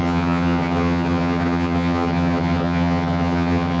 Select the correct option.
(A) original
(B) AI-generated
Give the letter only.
B